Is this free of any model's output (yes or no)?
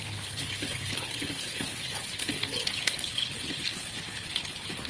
no